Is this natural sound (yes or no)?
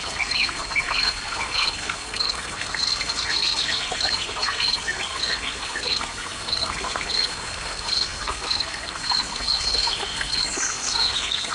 no